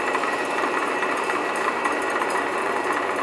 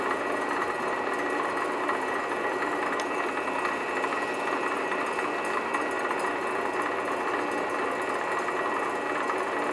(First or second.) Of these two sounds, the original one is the second